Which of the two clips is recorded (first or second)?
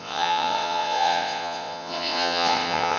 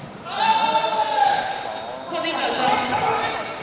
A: second